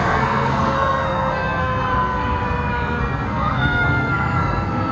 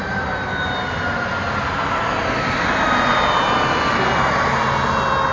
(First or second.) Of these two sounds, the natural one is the second